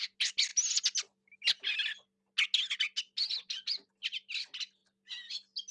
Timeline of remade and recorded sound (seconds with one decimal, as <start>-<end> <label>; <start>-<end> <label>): 0.0-5.7 recorded